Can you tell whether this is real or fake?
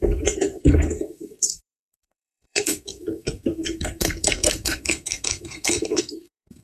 fake